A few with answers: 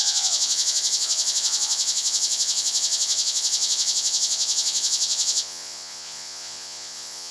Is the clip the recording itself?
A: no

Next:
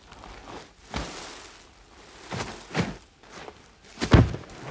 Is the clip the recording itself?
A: yes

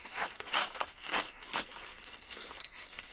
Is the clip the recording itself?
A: no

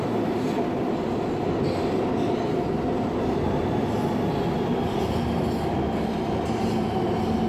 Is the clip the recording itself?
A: yes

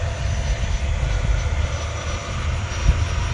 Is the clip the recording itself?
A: yes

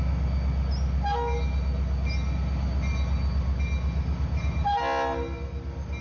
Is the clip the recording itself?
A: yes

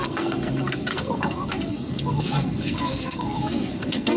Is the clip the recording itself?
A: no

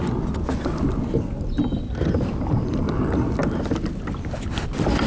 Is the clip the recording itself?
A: yes